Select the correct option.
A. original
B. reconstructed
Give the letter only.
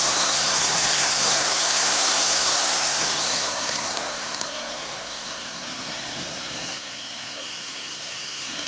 B